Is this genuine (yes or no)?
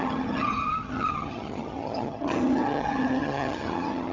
no